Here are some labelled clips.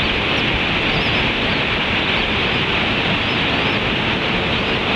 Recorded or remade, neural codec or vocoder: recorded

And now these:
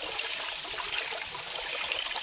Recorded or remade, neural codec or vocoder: recorded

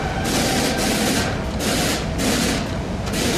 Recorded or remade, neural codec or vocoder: recorded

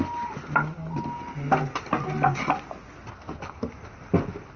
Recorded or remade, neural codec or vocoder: recorded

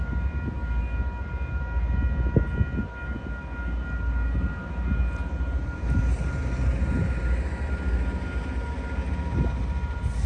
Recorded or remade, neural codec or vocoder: recorded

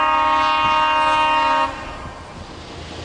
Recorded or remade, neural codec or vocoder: recorded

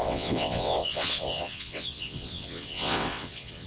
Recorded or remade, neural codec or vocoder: remade, vocoder, WaveNeXt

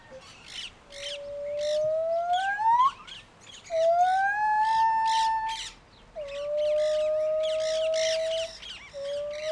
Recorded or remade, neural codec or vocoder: recorded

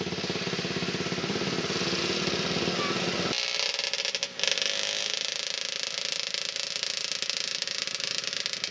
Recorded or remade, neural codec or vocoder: recorded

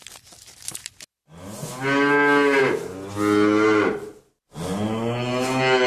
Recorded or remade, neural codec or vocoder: recorded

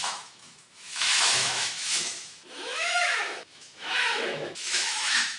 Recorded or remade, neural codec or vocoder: remade, autoencoder, DAC-VAE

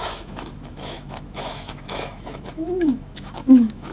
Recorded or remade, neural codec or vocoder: remade, autoencoder, DAC-VAE